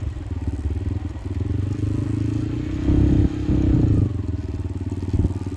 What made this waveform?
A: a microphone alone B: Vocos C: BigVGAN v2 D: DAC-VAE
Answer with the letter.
A